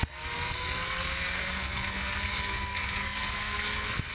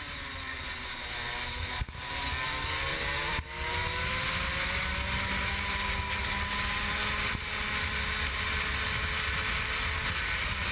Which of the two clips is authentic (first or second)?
second